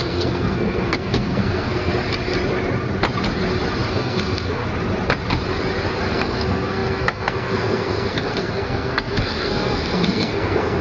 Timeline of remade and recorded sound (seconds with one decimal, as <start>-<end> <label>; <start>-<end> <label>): 0.0-1.9 remade; 1.9-3.9 recorded; 3.9-4.6 remade; 4.6-6.1 recorded; 6.1-10.8 remade

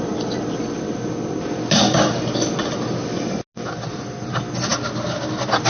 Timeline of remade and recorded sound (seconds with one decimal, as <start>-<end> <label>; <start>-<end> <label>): 0.0-5.7 recorded